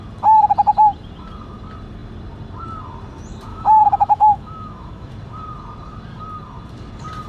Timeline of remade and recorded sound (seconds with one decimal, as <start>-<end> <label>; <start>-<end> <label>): 0.0-3.5 recorded; 3.5-5.1 remade; 5.1-7.3 recorded